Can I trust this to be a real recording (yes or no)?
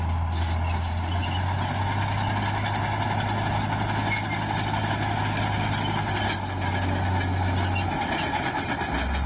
yes